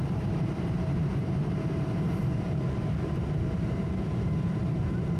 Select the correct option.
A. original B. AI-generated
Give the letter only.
B